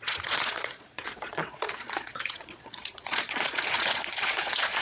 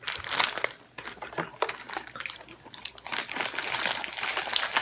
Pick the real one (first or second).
second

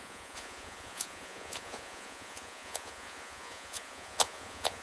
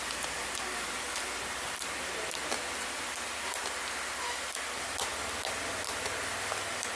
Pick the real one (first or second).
second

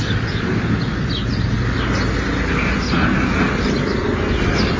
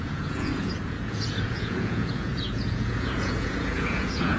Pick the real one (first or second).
first